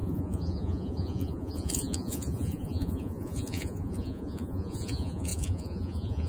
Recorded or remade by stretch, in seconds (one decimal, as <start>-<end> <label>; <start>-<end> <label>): 0.0-6.3 remade